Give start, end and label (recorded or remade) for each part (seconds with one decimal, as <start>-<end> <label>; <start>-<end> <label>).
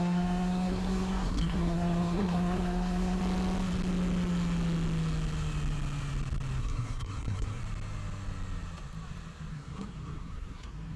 0.0-3.2 remade; 3.2-6.6 recorded; 6.6-7.6 remade; 7.6-9.5 recorded; 9.5-11.0 remade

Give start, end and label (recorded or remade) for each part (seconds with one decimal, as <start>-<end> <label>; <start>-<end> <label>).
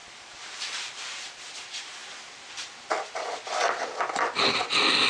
0.0-1.4 remade; 1.4-5.1 recorded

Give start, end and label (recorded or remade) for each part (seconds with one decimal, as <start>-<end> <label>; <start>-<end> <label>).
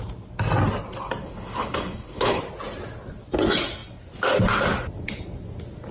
0.0-1.2 recorded; 1.2-2.4 remade; 2.4-5.9 recorded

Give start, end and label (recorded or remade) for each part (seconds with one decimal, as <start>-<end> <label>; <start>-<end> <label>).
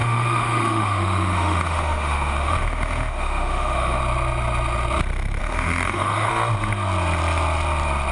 0.0-4.0 remade; 4.0-5.4 recorded; 5.4-6.3 remade; 6.3-8.1 recorded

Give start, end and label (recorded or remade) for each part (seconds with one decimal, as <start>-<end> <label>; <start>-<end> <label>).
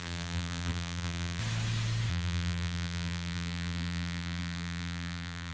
0.0-1.4 remade; 1.4-2.1 recorded; 2.1-5.5 remade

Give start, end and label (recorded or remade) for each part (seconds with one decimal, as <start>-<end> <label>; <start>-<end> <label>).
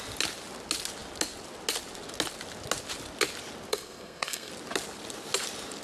0.0-3.7 recorded; 3.7-4.5 remade; 4.5-5.8 recorded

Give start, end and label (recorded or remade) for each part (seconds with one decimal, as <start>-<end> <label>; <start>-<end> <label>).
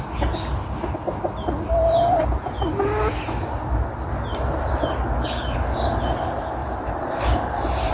0.0-6.6 recorded; 6.6-7.9 remade